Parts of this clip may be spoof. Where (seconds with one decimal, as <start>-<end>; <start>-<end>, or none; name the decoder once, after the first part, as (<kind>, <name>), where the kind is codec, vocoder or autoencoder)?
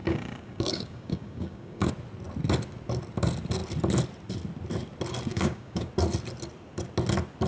0.0-1.9 (codec, DAC); 5.3-5.9